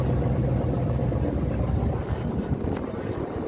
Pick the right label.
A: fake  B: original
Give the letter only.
B